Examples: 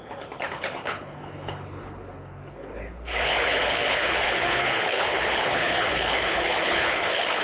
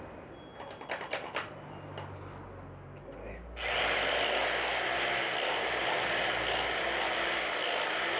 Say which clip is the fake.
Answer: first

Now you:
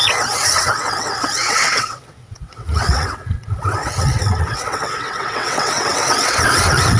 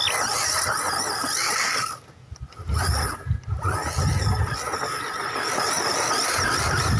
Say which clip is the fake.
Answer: first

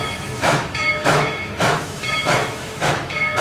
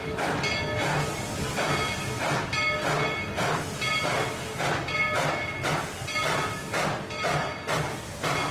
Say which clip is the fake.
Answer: first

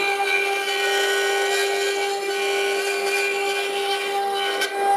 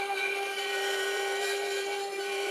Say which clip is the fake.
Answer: second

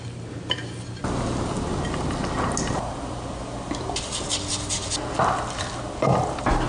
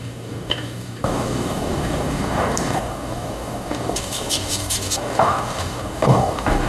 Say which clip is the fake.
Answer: second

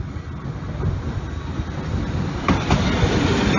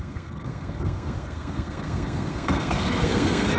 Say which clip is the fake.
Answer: second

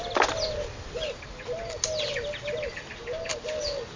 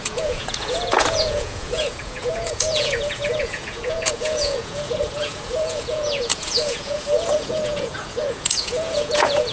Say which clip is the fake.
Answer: second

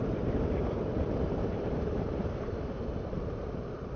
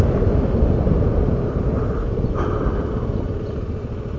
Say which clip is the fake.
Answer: first